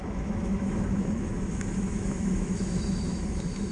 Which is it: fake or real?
fake